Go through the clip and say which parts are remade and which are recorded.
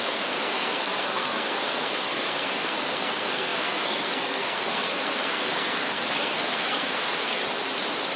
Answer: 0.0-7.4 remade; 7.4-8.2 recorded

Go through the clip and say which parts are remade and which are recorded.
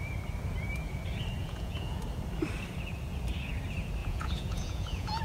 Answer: 0.0-1.4 recorded; 1.4-2.0 remade; 2.0-4.0 recorded; 4.0-5.2 remade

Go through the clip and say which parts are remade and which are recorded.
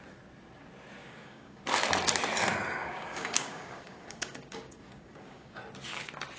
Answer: 0.0-1.0 recorded; 1.0-1.6 remade; 1.6-2.8 recorded; 2.8-5.6 remade; 5.6-6.4 recorded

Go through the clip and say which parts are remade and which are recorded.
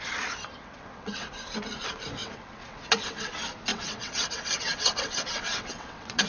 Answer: 0.0-0.6 recorded; 0.6-1.3 remade; 1.3-2.2 recorded; 2.2-3.3 remade; 3.3-3.7 recorded; 3.7-6.3 remade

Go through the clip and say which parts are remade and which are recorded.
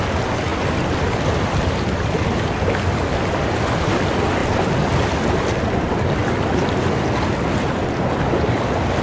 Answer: 0.0-9.0 recorded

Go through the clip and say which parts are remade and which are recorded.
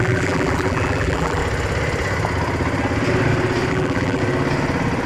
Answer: 0.0-1.4 remade; 1.4-3.7 recorded; 3.7-4.2 remade; 4.2-5.1 recorded